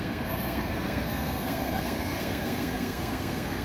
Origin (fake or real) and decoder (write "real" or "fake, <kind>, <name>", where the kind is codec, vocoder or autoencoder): fake, codec, SNAC